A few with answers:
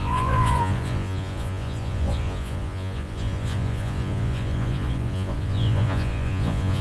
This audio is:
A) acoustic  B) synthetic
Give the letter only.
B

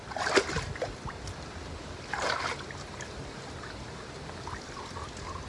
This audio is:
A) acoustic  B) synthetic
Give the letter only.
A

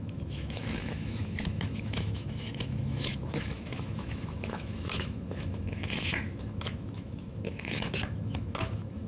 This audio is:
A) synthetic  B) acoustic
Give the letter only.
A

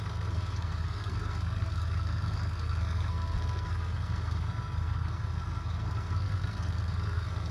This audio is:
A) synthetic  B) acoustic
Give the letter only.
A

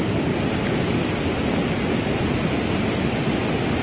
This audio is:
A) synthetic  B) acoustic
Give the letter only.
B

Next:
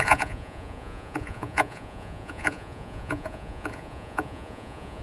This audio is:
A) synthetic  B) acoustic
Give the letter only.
A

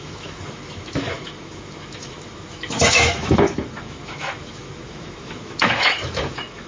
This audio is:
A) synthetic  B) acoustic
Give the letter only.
A